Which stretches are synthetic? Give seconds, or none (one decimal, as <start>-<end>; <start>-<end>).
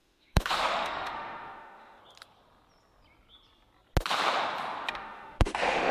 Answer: 0.0-2.0; 4.9-5.9